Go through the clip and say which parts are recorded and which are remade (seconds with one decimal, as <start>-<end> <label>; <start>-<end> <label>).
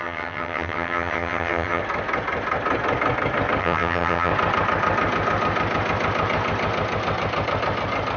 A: 0.0-1.8 remade; 1.8-3.6 recorded; 3.6-4.3 remade; 4.3-8.2 recorded